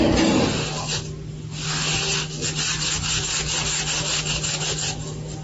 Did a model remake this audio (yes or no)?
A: no